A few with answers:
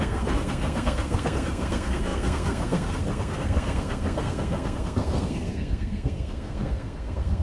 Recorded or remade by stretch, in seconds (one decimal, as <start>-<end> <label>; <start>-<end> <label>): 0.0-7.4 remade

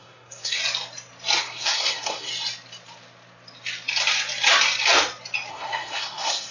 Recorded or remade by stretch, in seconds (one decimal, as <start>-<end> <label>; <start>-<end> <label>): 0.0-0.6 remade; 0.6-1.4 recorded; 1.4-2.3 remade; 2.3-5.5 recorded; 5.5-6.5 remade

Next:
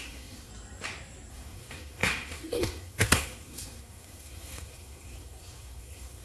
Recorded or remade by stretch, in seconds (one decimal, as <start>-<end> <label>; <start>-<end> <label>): 0.0-0.5 remade; 0.5-1.3 recorded; 1.3-6.2 remade

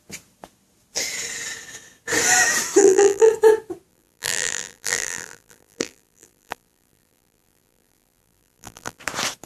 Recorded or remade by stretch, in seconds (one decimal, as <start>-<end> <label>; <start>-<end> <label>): 0.0-2.8 recorded; 2.8-3.3 remade; 3.3-3.9 recorded; 3.9-9.0 remade; 9.0-9.5 recorded